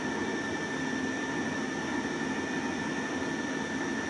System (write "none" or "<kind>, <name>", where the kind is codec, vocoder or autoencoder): none